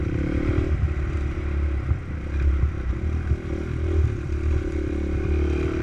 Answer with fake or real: real